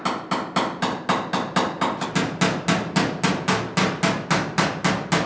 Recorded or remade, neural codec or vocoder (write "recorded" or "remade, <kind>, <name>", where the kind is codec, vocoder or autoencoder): recorded